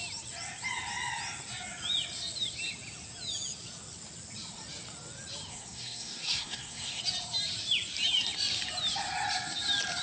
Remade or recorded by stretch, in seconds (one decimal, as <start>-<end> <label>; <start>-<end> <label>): 0.0-5.5 recorded; 5.5-7.0 remade; 7.0-10.0 recorded

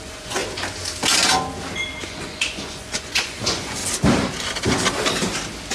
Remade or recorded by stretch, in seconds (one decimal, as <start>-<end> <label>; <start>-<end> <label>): 0.0-0.4 remade; 0.4-2.0 recorded; 2.0-3.8 remade; 3.8-5.7 recorded

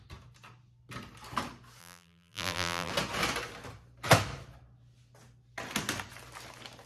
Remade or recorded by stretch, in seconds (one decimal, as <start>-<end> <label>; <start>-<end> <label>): 0.0-1.8 recorded; 1.8-2.9 remade; 2.9-6.9 recorded

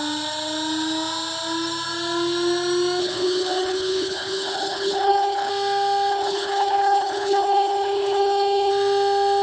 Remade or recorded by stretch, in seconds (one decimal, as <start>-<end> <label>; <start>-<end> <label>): 0.0-3.0 recorded; 3.0-5.5 remade; 5.5-6.1 recorded; 6.1-8.7 remade; 8.7-9.4 recorded

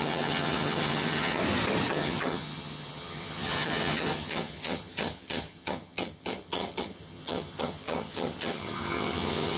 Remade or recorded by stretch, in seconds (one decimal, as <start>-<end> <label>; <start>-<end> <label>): 0.0-1.4 remade; 1.4-1.9 recorded; 1.9-9.6 remade

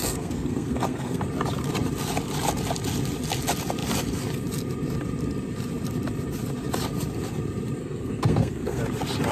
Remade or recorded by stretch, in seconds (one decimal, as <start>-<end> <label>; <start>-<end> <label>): 0.0-1.2 remade; 1.2-7.8 recorded; 7.8-8.8 remade; 8.8-9.3 recorded